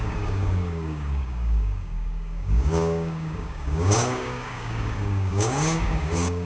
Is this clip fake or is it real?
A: fake